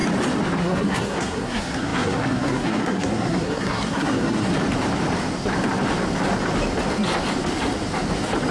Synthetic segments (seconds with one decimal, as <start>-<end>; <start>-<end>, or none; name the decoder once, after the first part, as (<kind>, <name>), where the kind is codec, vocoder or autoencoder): 0.6-4.5 (codec, SNAC)